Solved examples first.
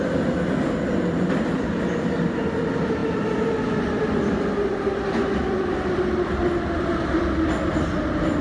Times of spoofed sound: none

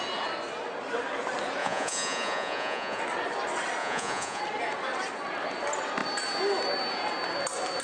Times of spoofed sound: 1.6-3.0 (vocoder, Vocos); 3.8-4.4

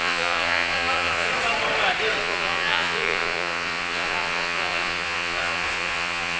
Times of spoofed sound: 0.0-1.3 (vocoder, Vocos); 2.2-6.4

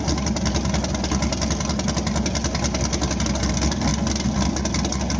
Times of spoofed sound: none

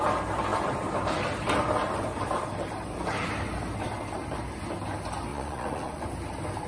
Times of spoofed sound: 5.3-6.1 (vocoder, Vocos)

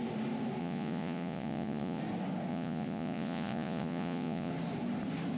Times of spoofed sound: 0.6-2.0 (vocoder, Vocos); 2.5-4.5

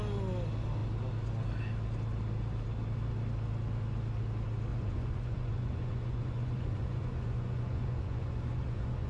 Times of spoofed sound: 4.7-9.1 (vocoder, Vocos)

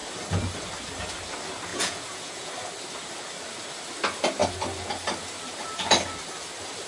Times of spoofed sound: 1.7-2.5 (vocoder, Vocos)